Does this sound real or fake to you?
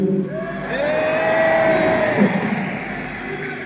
real